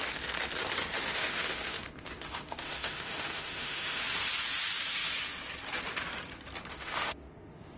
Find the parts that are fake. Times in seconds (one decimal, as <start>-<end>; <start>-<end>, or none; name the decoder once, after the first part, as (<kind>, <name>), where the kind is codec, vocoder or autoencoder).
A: 1.1-4.0 (autoencoder, DAC-VAE); 6.7-7.8